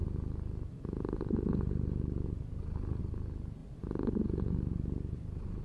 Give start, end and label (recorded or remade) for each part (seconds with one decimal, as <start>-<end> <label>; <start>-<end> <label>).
0.0-5.6 recorded